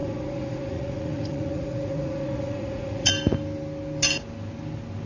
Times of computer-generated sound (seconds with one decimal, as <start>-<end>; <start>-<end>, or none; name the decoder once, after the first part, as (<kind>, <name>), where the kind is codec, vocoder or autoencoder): 0.0-3.1 (vocoder, Vocos)